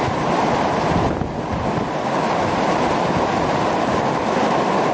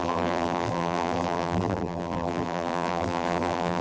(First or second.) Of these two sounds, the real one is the first